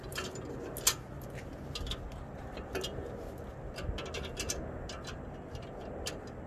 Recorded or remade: recorded